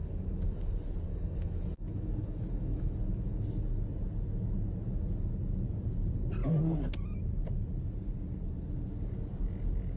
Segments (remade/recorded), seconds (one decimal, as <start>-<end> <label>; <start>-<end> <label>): 0.0-0.7 remade; 0.7-1.1 recorded; 1.1-2.9 remade; 2.9-10.0 recorded